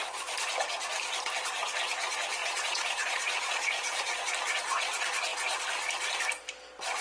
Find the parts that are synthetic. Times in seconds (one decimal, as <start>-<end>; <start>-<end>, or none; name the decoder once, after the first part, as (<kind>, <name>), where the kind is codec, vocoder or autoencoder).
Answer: 2.4-4.3 (vocoder, Vocos)